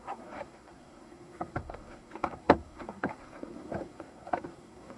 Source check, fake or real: fake